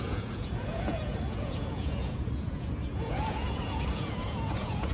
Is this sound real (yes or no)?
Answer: no